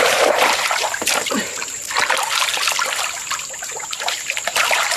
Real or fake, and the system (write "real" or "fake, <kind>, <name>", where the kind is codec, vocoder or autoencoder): fake, vocoder, BigVGAN v2